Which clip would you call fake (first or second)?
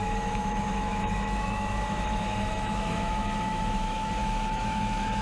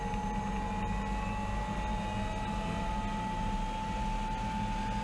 first